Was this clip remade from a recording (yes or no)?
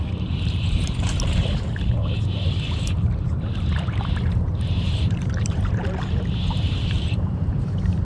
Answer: yes